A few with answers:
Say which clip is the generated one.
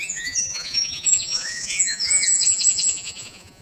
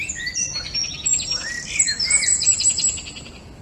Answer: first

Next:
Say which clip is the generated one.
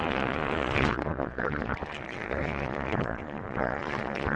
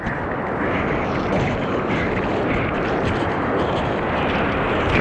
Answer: first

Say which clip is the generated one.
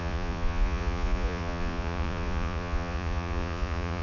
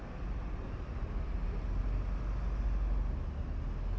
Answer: first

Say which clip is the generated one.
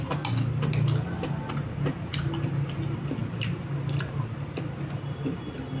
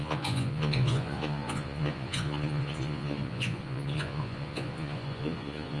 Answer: second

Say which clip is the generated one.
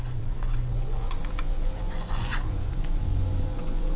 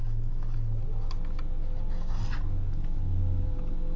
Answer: first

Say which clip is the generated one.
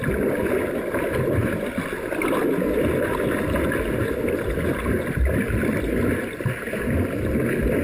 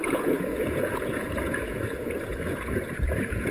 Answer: second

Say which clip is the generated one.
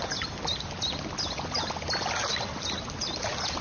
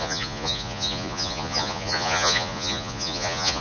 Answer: second